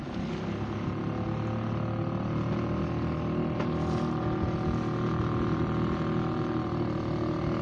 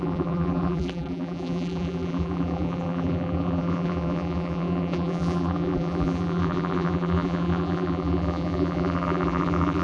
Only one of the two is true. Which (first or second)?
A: first